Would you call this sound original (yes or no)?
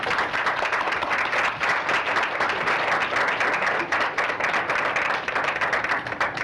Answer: yes